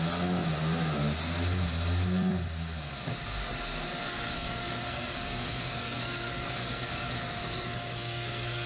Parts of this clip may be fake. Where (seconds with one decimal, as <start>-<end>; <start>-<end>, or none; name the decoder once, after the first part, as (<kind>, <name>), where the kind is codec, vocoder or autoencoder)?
3.9-8.7 (codec, SNAC)